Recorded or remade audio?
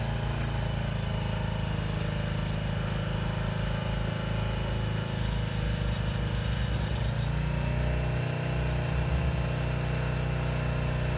recorded